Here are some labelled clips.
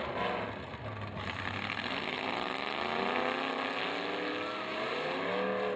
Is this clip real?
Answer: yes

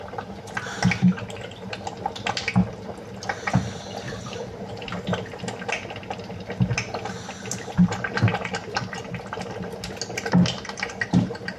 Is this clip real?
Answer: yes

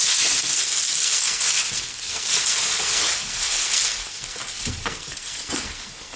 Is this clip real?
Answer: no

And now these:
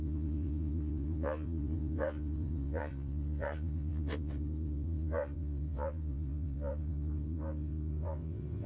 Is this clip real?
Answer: no